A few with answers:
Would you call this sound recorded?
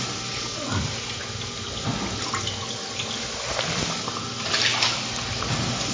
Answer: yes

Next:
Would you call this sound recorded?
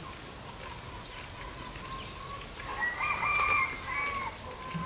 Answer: yes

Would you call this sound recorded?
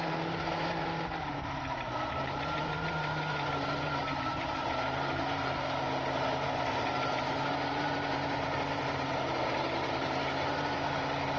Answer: no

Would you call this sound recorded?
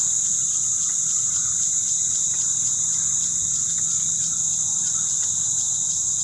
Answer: no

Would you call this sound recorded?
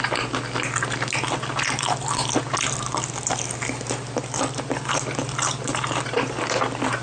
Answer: yes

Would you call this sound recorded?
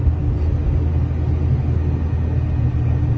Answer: yes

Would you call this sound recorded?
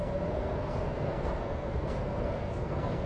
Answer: no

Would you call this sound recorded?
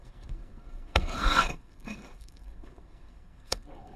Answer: no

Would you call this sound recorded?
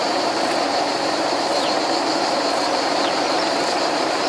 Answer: no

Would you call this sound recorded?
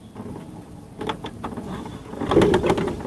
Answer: no